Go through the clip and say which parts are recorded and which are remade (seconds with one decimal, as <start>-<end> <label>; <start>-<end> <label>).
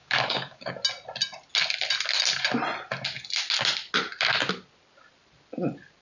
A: 0.0-0.7 remade; 0.7-6.0 recorded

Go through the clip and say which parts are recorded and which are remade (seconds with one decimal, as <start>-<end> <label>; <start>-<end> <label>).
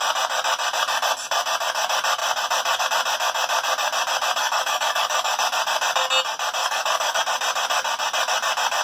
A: 0.0-4.4 recorded; 4.4-5.4 remade; 5.4-6.6 recorded; 6.6-7.2 remade; 7.2-8.8 recorded